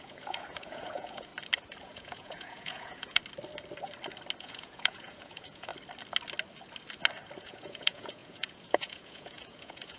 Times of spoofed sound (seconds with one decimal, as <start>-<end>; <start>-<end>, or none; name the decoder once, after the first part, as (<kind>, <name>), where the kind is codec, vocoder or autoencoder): 0.0-1.3 (vocoder, Vocos); 1.8-3.2; 4.4-5.7; 7.4-10.0